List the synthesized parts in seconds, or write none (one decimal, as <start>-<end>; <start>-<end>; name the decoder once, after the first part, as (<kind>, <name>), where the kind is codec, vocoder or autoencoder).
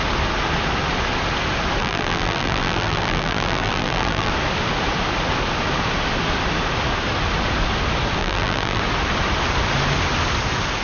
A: 1.8-4.3 (vocoder, BigVGAN v2); 8.2-8.8